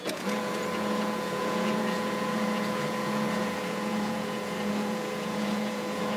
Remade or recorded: remade